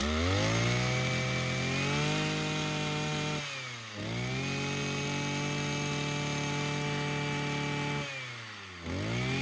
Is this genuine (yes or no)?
yes